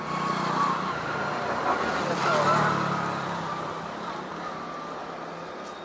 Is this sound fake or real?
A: real